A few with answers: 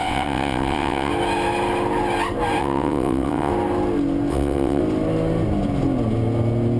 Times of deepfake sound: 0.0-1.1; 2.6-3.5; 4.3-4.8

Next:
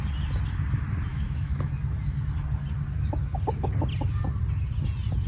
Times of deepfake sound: 1.1-1.7

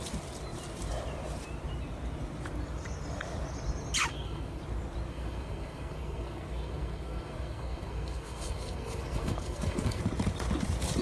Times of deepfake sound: 4.1-4.6; 5.1-10.0